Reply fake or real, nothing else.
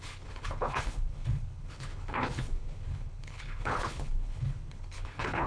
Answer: fake